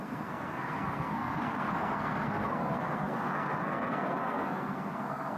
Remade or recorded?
remade